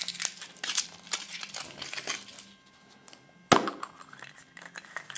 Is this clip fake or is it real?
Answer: real